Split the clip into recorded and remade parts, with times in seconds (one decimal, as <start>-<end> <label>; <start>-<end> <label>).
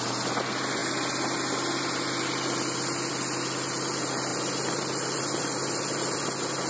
0.0-4.3 recorded; 4.3-6.2 remade; 6.2-6.7 recorded